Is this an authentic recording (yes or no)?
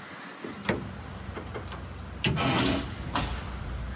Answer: yes